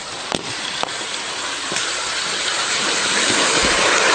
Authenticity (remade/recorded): recorded